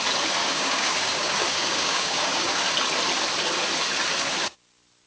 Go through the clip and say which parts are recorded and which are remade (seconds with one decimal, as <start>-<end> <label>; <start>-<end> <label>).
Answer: 0.0-0.4 recorded; 0.4-2.6 remade; 2.6-5.1 recorded